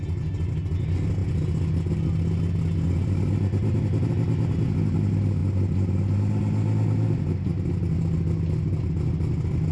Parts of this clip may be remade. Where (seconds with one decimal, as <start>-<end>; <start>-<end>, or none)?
none